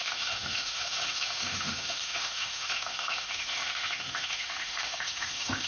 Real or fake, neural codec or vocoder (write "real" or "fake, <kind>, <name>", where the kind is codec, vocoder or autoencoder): fake, autoencoder, DAC-VAE